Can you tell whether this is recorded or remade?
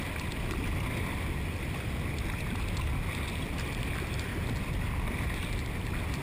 recorded